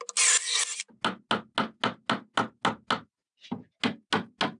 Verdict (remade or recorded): recorded